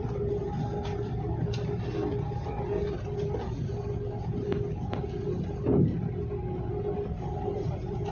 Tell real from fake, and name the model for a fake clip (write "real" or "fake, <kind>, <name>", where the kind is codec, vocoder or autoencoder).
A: real